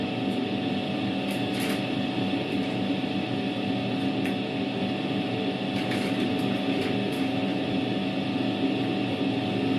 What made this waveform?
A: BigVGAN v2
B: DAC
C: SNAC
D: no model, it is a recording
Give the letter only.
D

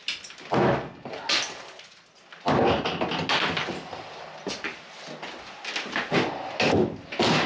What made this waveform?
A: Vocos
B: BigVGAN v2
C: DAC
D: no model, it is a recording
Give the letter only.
D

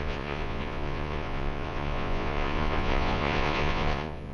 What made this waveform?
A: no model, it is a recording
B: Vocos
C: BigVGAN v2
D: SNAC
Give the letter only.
B